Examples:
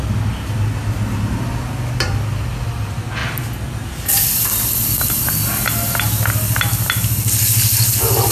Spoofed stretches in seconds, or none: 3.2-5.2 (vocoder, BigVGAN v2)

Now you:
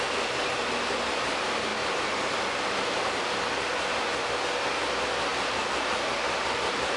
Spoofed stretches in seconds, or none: 1.7-4.2 (vocoder, BigVGAN v2); 5.3-7.0

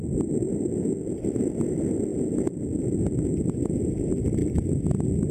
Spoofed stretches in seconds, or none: none